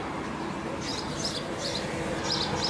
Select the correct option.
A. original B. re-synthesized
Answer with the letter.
A